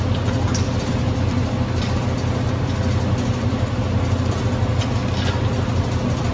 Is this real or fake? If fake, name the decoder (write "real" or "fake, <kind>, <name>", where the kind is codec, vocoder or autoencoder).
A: real